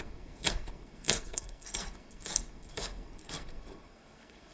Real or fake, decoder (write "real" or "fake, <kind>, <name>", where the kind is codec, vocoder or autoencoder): fake, codec, SNAC